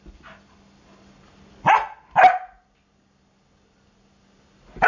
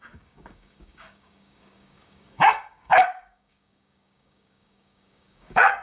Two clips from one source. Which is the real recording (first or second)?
first